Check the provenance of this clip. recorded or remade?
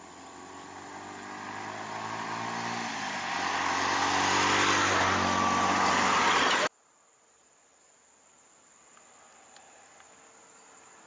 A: recorded